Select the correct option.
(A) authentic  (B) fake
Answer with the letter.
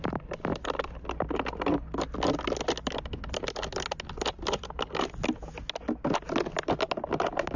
A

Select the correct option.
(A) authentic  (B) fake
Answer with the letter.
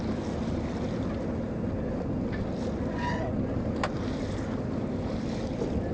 A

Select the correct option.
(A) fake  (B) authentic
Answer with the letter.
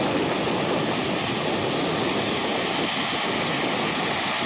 B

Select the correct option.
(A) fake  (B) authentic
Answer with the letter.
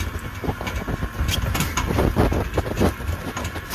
B